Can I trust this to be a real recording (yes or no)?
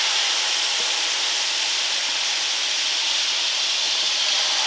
yes